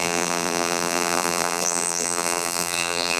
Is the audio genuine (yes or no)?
no